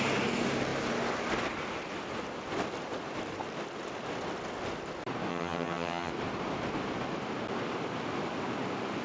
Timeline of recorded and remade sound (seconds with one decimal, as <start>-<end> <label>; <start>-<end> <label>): 0.0-5.3 recorded; 5.3-6.1 remade; 6.1-9.0 recorded